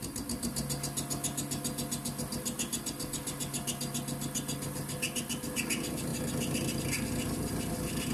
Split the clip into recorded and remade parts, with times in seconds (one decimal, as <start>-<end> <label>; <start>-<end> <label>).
0.0-8.1 recorded